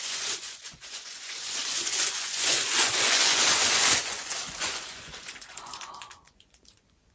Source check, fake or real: fake